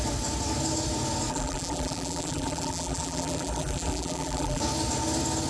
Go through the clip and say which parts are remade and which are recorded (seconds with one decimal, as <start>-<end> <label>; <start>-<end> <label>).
0.0-1.3 recorded; 1.3-4.6 remade; 4.6-5.5 recorded